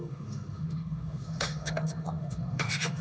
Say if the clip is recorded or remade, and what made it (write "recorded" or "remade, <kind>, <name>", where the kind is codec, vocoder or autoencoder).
remade, autoencoder, DAC-VAE